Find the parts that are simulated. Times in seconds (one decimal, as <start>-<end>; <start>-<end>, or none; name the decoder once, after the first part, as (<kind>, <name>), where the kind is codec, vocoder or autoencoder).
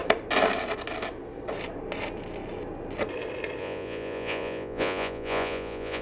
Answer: 3.6-6.0 (vocoder, Vocos)